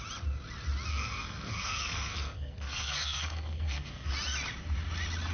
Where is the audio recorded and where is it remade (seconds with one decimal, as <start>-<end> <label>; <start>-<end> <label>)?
0.0-0.9 recorded; 0.9-4.1 remade; 4.1-5.3 recorded